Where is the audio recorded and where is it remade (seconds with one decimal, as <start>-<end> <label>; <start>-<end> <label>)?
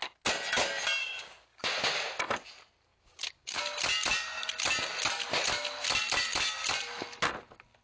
0.0-1.0 recorded; 1.0-1.7 remade; 1.7-2.9 recorded; 2.9-3.6 remade; 3.6-7.8 recorded